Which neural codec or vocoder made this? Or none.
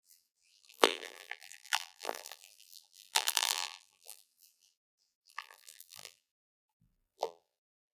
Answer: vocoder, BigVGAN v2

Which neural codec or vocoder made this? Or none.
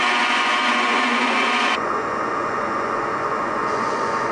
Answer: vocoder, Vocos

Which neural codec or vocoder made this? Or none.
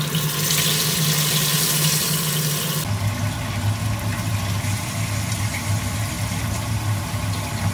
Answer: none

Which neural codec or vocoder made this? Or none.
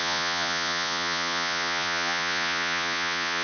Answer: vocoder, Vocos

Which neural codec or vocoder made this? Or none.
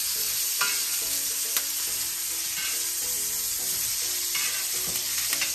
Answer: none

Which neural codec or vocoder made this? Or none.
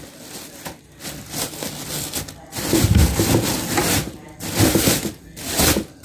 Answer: none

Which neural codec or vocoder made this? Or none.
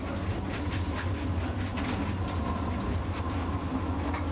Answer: none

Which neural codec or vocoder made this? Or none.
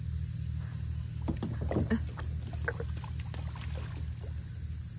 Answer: none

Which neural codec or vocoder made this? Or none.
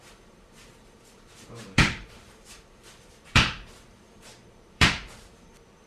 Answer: vocoder, BigVGAN v2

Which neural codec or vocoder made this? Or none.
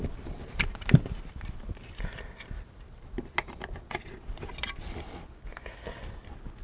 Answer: none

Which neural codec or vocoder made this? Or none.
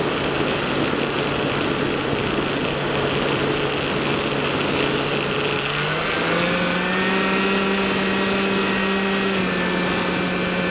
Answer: none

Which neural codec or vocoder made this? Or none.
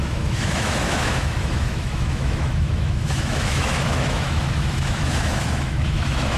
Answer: autoencoder, DAC-VAE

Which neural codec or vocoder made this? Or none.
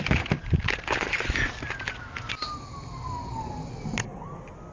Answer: none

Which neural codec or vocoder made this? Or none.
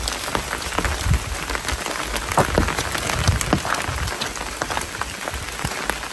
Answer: none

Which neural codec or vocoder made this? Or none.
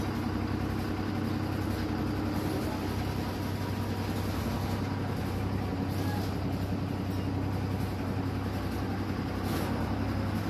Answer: none